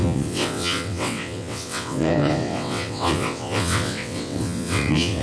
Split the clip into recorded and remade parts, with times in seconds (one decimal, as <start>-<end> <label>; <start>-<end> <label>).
0.0-5.2 remade